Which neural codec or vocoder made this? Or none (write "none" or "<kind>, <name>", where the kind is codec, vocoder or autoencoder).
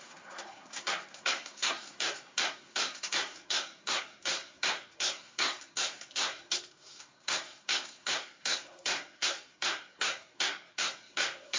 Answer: codec, SNAC